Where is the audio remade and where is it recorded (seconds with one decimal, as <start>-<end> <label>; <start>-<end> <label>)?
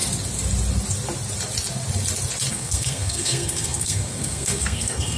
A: 0.0-2.5 recorded; 2.5-5.2 remade